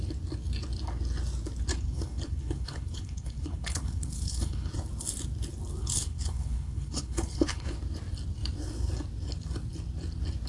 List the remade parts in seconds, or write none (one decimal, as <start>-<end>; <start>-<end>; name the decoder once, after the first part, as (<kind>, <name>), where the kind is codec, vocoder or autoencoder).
1.7-4.7 (codec, HILCodec); 5.8-7.8

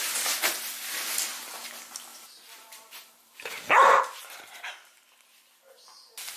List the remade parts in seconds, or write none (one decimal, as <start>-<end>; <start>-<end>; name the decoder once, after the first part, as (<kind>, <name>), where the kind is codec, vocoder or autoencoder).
2.1-4.0 (vocoder, BigVGAN v2)